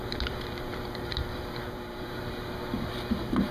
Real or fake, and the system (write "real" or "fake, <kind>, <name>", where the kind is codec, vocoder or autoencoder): fake, vocoder, BigVGAN v2